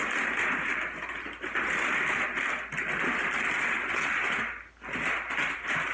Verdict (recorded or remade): recorded